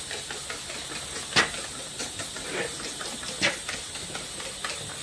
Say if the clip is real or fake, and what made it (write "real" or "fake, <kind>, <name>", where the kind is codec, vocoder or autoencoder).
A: real